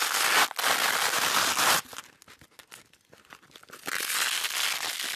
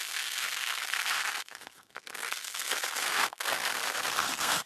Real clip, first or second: first